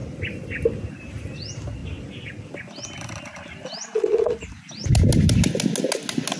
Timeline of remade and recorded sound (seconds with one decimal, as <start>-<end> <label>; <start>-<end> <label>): 0.0-6.4 recorded